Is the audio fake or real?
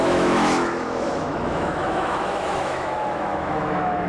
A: fake